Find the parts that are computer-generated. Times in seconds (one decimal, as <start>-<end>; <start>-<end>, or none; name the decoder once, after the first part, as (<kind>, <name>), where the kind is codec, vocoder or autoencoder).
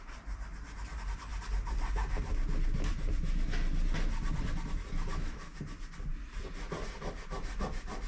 5.1-5.6 (autoencoder, DAC-VAE)